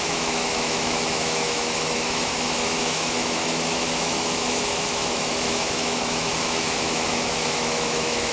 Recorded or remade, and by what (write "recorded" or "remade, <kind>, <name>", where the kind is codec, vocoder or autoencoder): remade, autoencoder, DAC-VAE